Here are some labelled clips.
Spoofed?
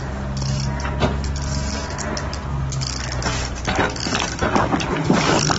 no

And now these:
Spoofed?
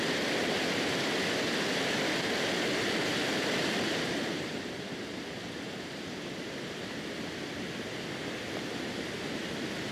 no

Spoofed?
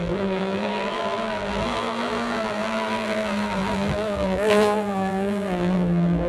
yes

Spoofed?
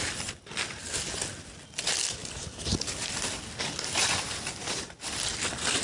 no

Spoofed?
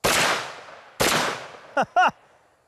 no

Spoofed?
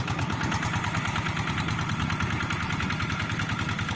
no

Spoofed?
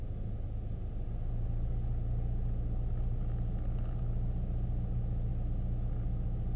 no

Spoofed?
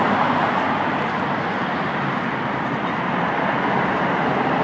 yes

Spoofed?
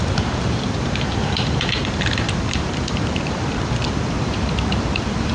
yes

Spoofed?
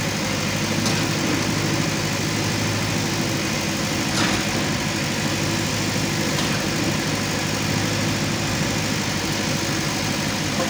no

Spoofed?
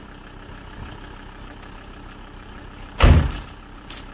yes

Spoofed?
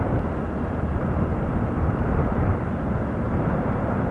yes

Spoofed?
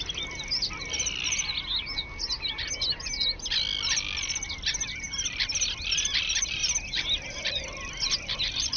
no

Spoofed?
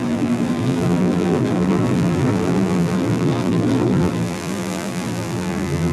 yes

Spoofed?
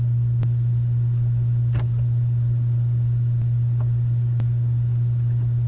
no